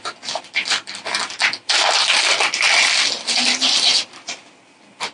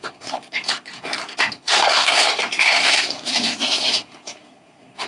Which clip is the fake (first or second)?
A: second